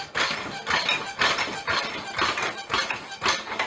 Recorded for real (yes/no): yes